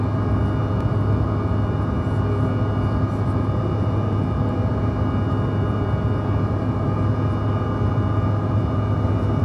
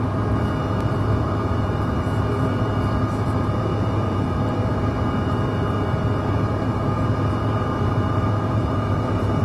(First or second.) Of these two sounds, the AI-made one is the second